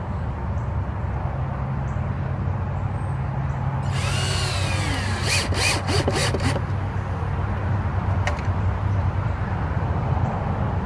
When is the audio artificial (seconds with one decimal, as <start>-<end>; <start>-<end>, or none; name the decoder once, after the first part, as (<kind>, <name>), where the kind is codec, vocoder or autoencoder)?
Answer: none